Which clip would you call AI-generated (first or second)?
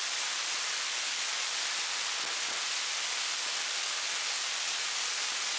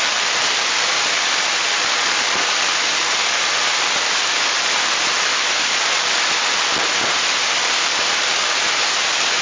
second